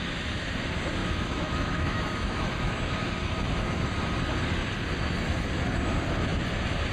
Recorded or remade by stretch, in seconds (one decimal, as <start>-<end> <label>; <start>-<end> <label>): 0.0-1.0 recorded; 1.0-2.7 remade; 2.7-6.9 recorded